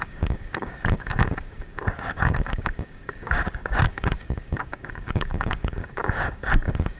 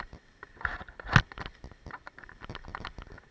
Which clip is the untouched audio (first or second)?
second